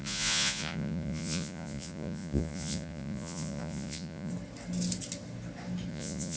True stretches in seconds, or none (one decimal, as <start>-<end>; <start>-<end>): 4.3-5.9